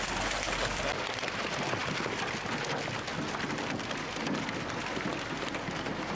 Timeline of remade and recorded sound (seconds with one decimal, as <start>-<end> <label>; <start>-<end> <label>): 0.0-6.2 recorded